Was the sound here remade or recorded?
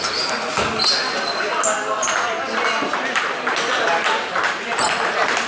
recorded